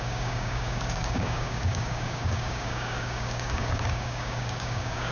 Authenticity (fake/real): fake